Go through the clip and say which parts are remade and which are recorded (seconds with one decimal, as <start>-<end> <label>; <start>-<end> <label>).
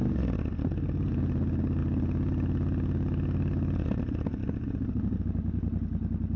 0.0-6.4 recorded